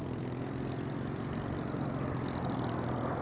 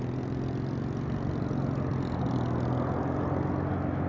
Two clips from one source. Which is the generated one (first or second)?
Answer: first